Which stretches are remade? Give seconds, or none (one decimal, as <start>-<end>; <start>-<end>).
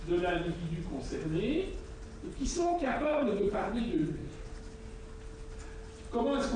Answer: 2.3-3.8